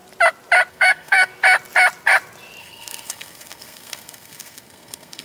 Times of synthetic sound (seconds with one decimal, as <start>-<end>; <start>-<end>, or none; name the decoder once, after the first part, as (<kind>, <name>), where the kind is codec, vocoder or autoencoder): 0.7-1.3 (codec, SNAC); 2.6-5.2